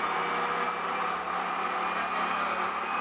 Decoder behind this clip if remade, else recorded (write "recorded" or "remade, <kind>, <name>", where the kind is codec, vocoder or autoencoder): recorded